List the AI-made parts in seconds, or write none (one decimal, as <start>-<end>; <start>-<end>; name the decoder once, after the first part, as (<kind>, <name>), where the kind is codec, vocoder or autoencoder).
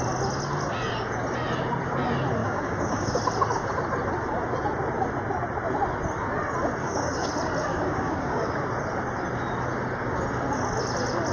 2.4-3.2 (codec, DAC); 6.8-7.3; 7.7-8.5